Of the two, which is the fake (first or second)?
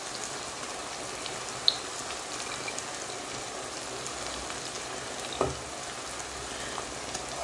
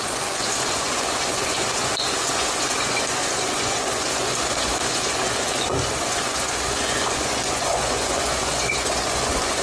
second